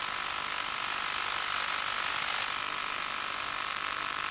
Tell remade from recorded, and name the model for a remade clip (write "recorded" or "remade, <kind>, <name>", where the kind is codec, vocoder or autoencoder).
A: recorded